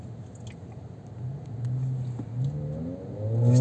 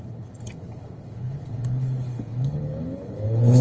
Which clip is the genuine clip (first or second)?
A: first